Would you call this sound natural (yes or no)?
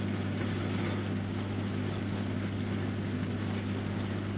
yes